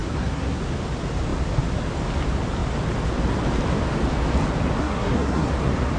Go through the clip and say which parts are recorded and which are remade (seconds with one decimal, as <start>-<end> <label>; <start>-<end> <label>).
0.0-0.6 remade; 0.6-4.8 recorded; 4.8-5.5 remade; 5.5-6.0 recorded